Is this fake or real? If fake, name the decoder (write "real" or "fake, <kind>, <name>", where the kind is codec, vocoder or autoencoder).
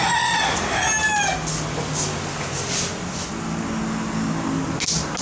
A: real